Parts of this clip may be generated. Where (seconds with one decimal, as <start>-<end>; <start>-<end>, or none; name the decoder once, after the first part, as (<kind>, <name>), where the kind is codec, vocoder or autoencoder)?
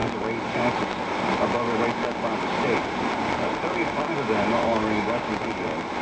4.7-5.3 (codec, DAC)